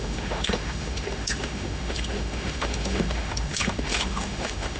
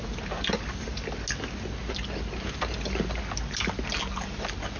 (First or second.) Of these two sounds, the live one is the second